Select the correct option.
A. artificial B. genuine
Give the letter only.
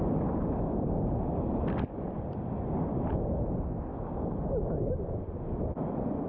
B